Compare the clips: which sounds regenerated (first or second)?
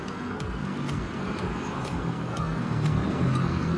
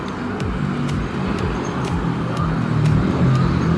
first